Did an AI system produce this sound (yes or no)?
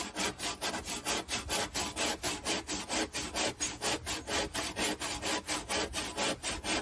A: no